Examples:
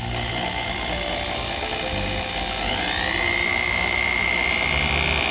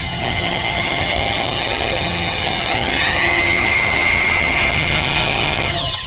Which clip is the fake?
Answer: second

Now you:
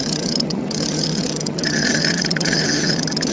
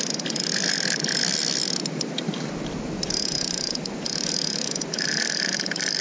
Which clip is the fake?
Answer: first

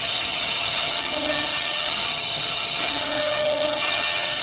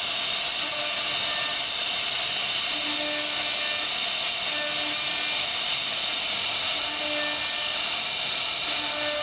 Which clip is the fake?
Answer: first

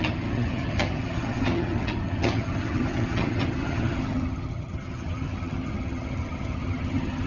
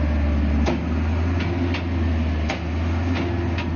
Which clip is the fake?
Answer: first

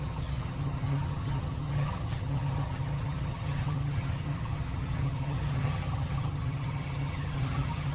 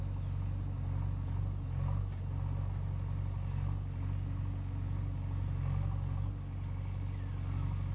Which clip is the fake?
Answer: first